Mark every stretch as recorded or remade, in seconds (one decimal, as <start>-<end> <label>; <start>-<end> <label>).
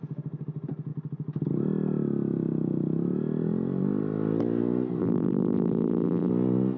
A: 0.0-5.0 recorded; 5.0-6.3 remade; 6.3-6.8 recorded